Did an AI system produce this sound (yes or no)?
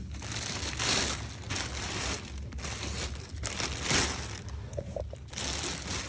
no